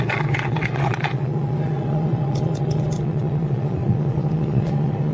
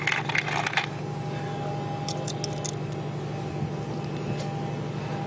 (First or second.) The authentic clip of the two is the second